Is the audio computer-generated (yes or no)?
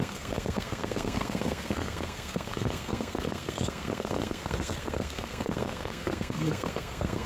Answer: yes